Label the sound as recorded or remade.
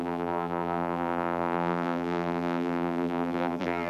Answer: remade